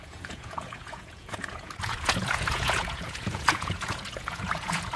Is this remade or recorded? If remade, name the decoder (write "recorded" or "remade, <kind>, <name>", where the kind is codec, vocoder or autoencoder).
remade, vocoder, Vocos